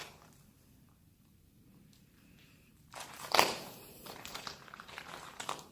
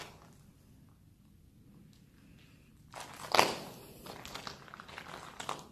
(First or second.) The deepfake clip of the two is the first